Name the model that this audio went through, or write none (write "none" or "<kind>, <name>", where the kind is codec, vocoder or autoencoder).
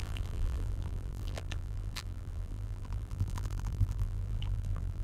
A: vocoder, BigVGAN v2